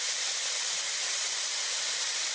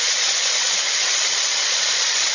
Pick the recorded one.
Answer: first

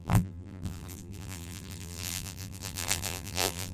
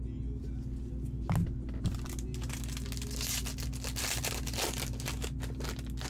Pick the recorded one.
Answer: second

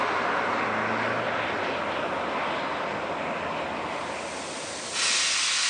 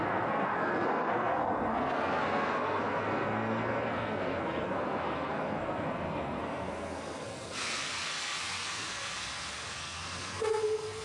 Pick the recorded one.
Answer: first